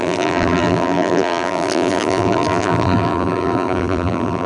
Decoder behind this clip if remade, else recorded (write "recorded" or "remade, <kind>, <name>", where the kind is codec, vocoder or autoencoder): remade, vocoder, BigVGAN v2